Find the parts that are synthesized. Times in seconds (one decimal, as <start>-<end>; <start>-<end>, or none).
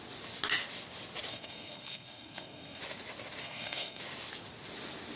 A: 1.3-2.8; 3.4-4.0